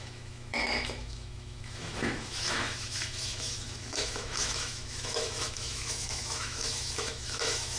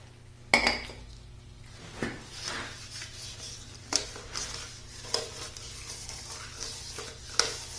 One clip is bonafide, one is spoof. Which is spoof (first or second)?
first